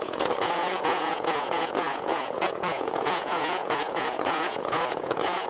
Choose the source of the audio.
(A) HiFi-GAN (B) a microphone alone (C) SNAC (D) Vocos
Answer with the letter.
D